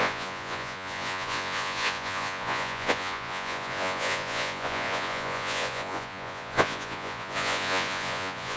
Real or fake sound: fake